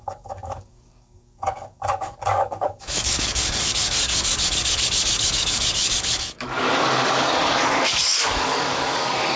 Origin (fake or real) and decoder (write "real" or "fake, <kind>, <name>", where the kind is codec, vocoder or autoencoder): fake, codec, DAC